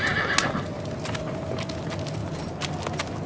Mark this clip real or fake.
real